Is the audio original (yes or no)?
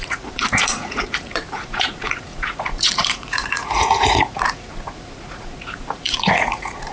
no